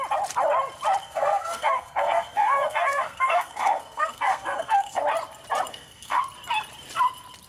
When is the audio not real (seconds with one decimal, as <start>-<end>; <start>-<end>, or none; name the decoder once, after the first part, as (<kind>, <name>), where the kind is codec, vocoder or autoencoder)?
1.0-5.0 (codec, SNAC); 5.7-6.2

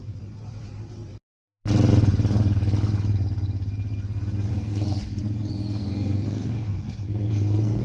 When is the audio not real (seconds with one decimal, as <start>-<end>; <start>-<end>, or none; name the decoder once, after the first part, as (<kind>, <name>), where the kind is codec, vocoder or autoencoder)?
4.5-5.2 (codec, SNAC); 5.8-7.8

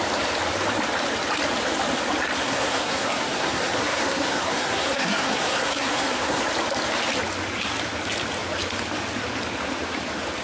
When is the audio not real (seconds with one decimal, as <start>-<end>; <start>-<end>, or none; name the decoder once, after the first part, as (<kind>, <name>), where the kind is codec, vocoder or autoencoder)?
2.4-6.4 (codec, SNAC)

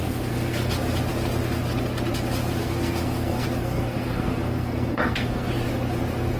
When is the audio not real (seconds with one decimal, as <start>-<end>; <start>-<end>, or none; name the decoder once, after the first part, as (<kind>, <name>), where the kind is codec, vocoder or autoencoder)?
0.0-0.7 (codec, SNAC); 2.6-5.5

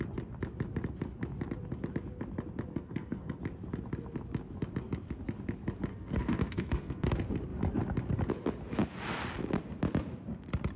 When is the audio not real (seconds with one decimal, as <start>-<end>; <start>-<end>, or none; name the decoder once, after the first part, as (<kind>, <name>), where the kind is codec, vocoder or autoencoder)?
2.7-3.4 (codec, SNAC); 5.9-7.1

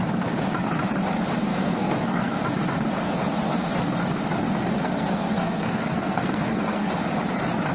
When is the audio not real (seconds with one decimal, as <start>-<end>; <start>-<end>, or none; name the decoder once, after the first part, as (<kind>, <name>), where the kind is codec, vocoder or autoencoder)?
1.5-2.4 (codec, SNAC); 4.7-6.9

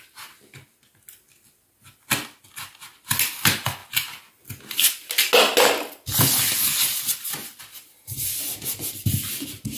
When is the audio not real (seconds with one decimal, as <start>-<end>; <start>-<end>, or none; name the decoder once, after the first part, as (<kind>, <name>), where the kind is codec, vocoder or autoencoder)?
none